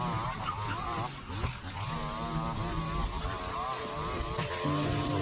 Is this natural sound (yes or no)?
yes